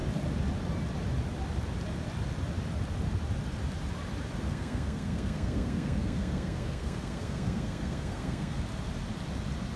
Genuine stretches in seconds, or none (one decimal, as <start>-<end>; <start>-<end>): 0.0-4.5; 8.6-9.8

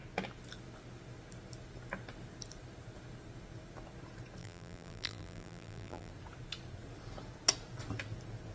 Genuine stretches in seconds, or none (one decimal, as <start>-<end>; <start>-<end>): 0.0-4.4; 6.1-8.5

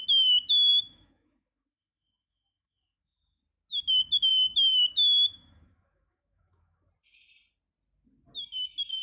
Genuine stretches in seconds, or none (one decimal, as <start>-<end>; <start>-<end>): 0.0-0.7; 3.4-4.3; 6.9-9.0

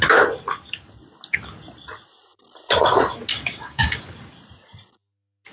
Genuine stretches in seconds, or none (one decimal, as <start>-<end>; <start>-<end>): 0.0-3.3; 4.0-5.5

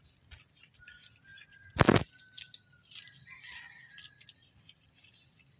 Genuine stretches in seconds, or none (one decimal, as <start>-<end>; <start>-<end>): 0.0-5.6